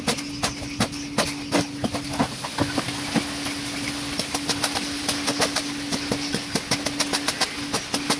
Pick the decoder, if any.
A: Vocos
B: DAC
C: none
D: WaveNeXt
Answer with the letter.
C